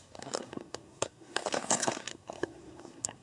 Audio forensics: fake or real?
fake